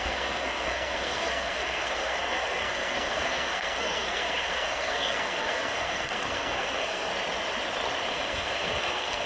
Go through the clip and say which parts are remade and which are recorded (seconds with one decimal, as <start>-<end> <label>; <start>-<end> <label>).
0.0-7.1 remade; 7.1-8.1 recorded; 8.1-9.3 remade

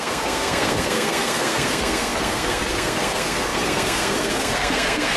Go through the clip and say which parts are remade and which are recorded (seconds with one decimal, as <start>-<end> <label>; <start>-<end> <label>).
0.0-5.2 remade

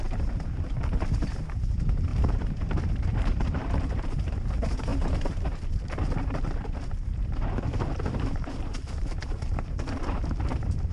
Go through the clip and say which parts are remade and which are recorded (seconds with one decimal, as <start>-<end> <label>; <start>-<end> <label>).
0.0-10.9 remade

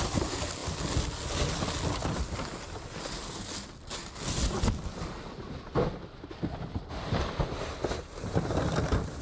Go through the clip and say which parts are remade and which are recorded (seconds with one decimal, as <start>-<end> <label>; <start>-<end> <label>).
0.0-9.2 recorded